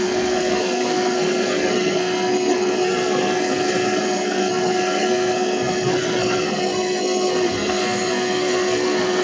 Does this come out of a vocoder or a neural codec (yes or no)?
yes